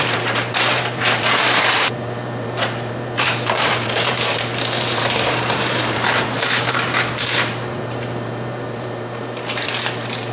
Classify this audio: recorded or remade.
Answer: remade